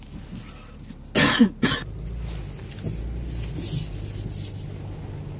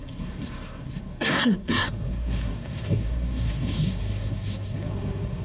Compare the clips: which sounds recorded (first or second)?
first